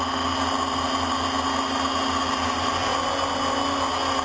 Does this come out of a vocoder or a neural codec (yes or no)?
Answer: no